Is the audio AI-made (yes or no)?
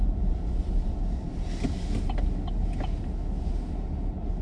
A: no